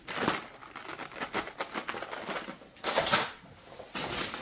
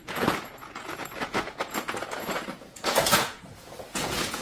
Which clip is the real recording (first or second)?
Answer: first